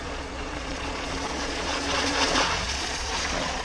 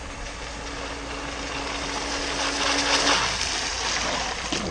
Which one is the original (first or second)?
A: second